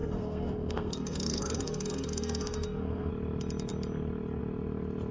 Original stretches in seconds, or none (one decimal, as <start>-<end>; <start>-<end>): 3.1-5.1